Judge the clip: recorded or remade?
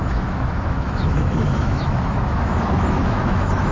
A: remade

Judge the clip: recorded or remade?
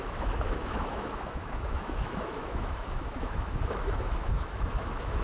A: remade